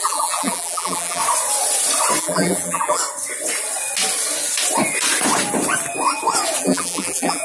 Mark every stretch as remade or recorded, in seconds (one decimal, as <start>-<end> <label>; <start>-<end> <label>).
0.0-1.2 remade; 1.2-2.2 recorded; 2.2-3.0 remade; 3.0-6.6 recorded; 6.6-7.4 remade